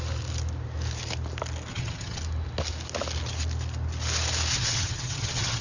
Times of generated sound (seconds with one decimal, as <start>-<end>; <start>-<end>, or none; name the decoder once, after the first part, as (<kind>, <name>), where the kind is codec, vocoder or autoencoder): 1.7-2.2 (vocoder, HiFi-GAN); 4.5-5.6